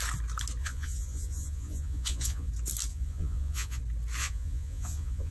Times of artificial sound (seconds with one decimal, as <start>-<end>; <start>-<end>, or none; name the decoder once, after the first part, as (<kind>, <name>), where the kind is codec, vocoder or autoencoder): 0.6-2.5 (vocoder, Vocos); 2.9-3.8; 4.2-5.3